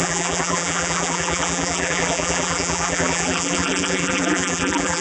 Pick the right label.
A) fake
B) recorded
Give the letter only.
A